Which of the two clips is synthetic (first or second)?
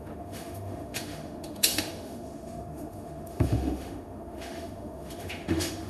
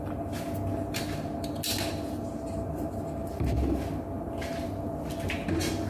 first